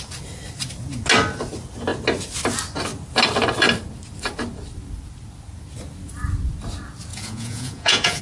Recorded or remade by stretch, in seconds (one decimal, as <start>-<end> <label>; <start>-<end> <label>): 0.0-7.1 recorded; 7.1-8.2 remade